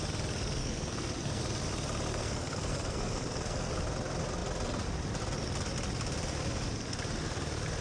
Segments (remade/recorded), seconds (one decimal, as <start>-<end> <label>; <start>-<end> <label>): 0.0-0.6 recorded; 0.6-1.4 remade; 1.4-2.1 recorded; 2.1-3.7 remade; 3.7-7.8 recorded